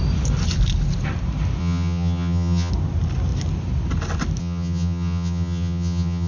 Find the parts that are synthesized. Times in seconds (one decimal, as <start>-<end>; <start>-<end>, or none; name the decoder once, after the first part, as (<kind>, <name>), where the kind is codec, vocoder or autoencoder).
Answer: 1.6-2.7 (vocoder, HiFi-GAN); 4.4-6.3